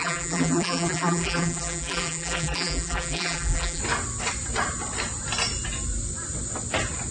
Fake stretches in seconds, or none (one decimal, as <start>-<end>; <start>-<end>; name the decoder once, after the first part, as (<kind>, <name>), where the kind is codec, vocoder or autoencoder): 0.0-3.8 (vocoder, BigVGAN v2)